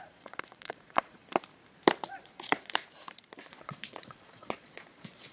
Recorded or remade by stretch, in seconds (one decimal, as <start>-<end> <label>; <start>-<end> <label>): 0.0-1.2 remade; 1.2-2.1 recorded; 2.1-2.8 remade; 2.8-3.5 recorded; 3.5-5.3 remade